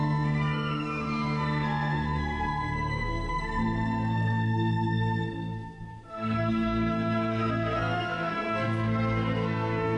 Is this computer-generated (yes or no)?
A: yes